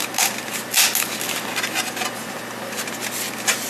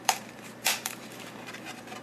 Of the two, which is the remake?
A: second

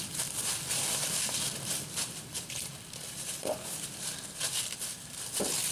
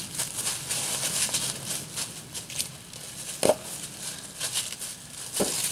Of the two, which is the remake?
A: first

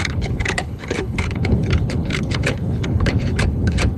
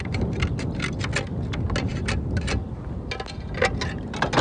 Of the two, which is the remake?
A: first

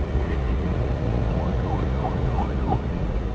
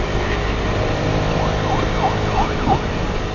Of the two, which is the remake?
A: first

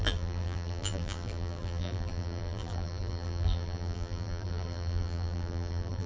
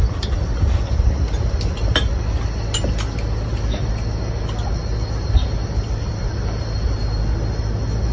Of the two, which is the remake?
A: first